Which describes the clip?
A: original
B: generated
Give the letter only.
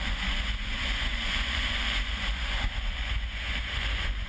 B